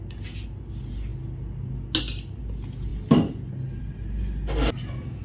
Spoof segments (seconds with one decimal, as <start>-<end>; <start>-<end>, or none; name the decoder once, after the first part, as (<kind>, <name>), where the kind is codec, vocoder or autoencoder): none